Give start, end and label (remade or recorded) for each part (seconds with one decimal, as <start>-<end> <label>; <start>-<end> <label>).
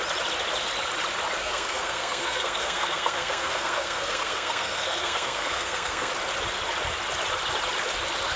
0.0-1.4 recorded; 1.4-6.1 remade; 6.1-8.4 recorded